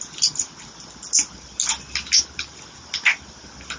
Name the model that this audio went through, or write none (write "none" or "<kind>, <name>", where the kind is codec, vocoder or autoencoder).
none